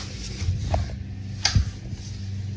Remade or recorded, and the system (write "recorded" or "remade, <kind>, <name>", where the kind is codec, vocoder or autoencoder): recorded